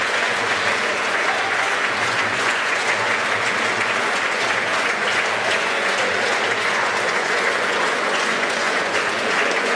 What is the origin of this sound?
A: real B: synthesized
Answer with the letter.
B